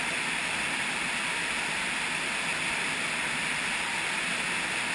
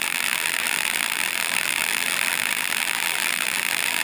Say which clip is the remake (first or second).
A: second